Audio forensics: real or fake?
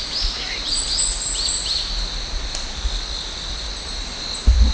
real